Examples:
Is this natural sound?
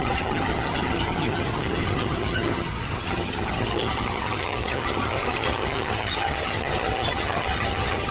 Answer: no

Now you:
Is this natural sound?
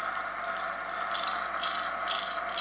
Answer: yes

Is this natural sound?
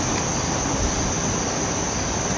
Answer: yes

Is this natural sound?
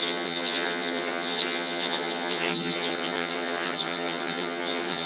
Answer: no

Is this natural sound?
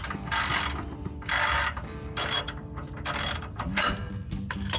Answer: yes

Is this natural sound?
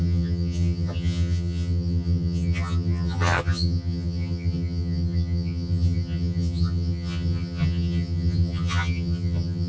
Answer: no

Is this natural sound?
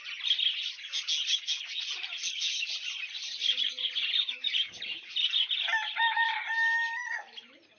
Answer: yes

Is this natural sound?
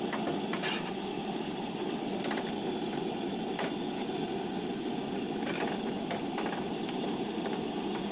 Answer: yes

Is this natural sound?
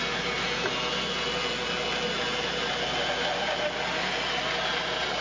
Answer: yes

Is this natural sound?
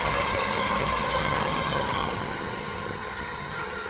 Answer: no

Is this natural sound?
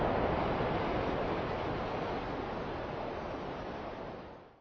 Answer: yes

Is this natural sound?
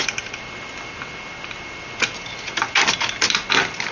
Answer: yes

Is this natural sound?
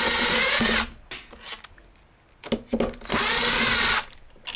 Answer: yes